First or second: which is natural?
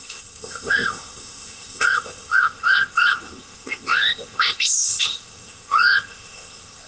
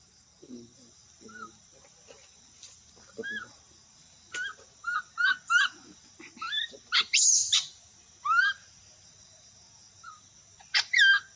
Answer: second